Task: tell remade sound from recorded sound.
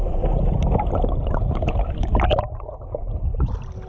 recorded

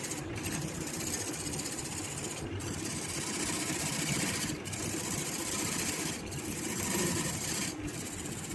remade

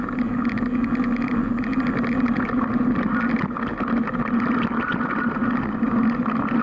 recorded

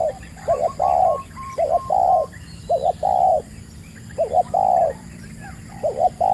remade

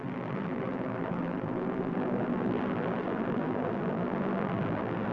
remade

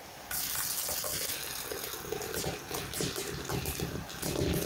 recorded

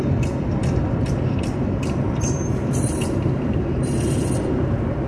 remade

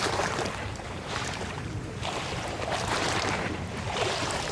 remade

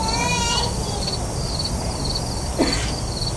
recorded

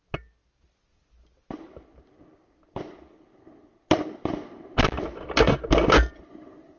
recorded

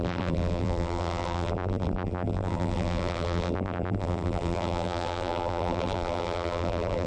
remade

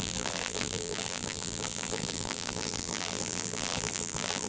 remade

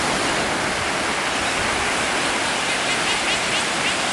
recorded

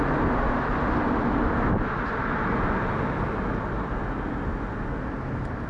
recorded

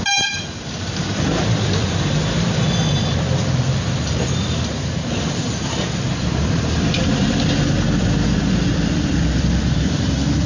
remade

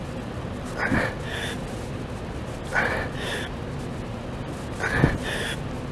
recorded